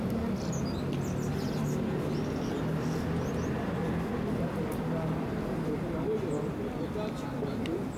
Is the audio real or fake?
real